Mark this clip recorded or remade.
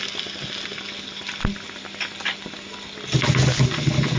recorded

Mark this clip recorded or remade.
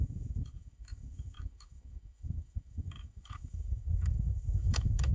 remade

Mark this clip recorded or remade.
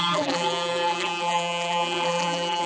remade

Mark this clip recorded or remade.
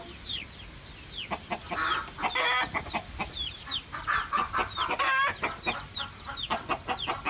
recorded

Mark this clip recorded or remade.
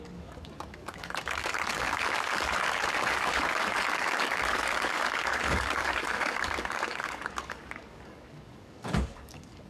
remade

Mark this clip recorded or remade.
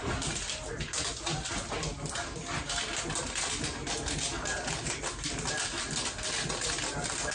recorded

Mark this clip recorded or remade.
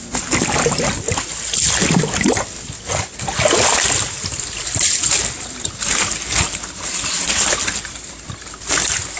recorded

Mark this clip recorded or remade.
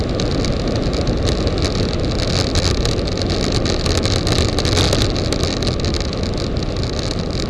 recorded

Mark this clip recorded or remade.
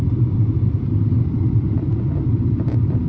remade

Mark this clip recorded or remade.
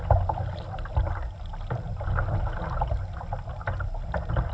recorded